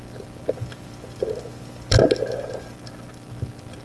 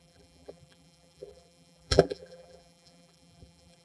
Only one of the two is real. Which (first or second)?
first